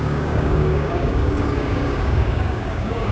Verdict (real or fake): fake